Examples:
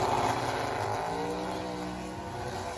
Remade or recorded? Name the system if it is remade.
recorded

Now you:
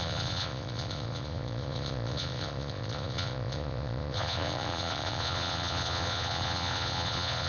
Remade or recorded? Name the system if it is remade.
remade, vocoder, Vocos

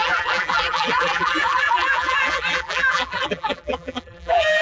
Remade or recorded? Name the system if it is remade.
remade, vocoder, BigVGAN v2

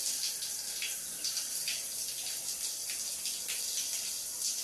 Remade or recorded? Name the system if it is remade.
recorded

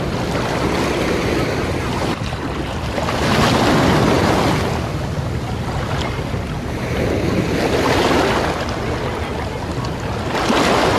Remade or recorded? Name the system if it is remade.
recorded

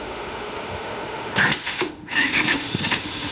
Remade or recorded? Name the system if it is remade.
remade, autoencoder, DAC-VAE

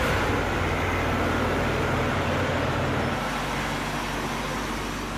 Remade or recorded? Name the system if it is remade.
recorded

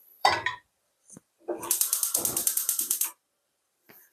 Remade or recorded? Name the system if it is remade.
remade, vocoder, BigVGAN v2